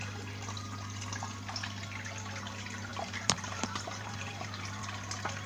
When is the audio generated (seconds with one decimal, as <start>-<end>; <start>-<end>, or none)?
2.9-4.8